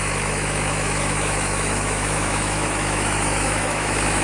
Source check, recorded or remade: remade